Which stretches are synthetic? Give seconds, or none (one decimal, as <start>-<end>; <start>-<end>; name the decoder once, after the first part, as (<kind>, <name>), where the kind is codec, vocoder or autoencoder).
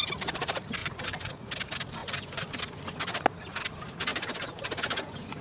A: 0.8-1.5 (vocoder, Vocos); 2.0-3.0; 4.1-5.4